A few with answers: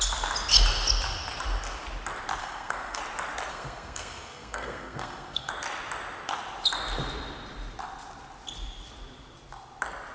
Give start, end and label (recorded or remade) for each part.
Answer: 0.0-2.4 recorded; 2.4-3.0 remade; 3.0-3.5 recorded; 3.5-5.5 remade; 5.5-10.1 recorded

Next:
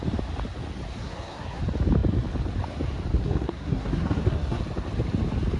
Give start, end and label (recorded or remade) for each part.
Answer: 0.0-1.0 recorded; 1.0-1.6 remade; 1.6-3.2 recorded; 3.2-4.6 remade; 4.6-5.6 recorded

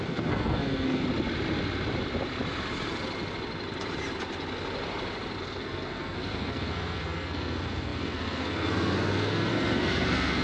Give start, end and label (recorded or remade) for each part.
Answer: 0.0-1.0 remade; 1.0-5.4 recorded; 5.4-10.4 remade

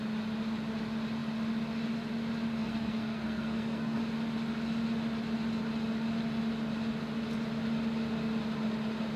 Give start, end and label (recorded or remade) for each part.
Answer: 0.0-2.6 recorded; 2.6-4.0 remade; 4.0-9.2 recorded

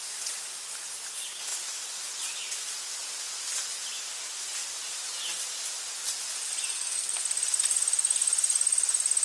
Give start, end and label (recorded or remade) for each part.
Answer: 0.0-6.7 recorded; 6.7-7.2 remade; 7.2-9.2 recorded

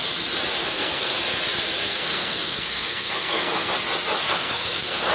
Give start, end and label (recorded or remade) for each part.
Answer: 0.0-0.6 recorded; 0.6-1.2 remade; 1.2-1.8 recorded; 1.8-3.7 remade; 3.7-4.2 recorded; 4.2-5.1 remade

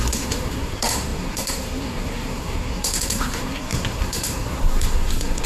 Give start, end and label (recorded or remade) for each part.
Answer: 0.0-5.5 remade